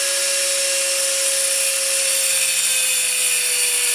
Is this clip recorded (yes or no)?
yes